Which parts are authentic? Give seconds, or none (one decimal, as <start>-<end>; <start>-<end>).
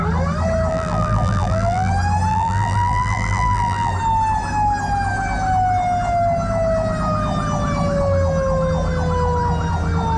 0.0-0.7; 1.9-2.3; 3.9-10.2